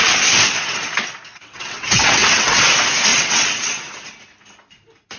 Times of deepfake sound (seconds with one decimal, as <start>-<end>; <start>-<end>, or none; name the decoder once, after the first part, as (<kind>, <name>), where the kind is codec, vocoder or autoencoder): 1.3-2.6 (vocoder, WaveNeXt); 3.1-3.9

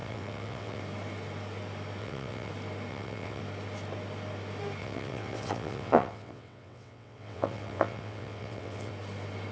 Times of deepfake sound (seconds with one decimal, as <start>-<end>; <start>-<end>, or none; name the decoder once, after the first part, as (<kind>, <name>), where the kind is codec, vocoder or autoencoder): 0.0-0.8 (vocoder, WaveNeXt); 2.0-2.5; 2.9-3.4; 4.8-8.9

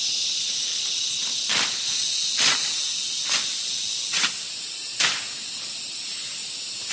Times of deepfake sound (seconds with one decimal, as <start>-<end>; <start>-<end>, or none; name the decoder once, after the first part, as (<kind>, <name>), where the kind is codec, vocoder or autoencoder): none

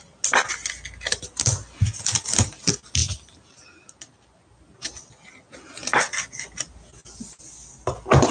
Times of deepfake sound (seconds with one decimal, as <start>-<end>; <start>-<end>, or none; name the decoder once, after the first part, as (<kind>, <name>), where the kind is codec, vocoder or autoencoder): none